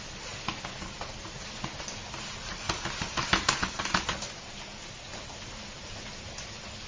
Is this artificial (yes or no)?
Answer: no